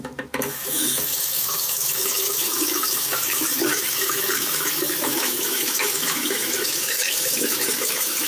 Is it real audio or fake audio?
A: fake